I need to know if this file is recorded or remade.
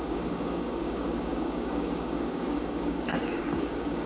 remade